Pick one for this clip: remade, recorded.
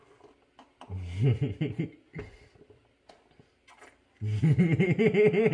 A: recorded